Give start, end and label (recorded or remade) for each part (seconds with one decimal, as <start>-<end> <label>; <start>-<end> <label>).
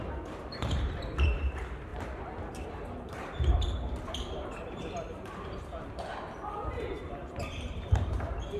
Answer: 0.0-8.6 remade